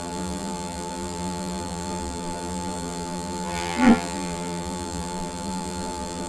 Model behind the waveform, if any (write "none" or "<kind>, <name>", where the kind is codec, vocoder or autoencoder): vocoder, BigVGAN v2